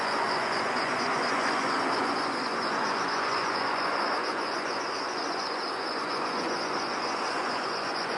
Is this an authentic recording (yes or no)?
no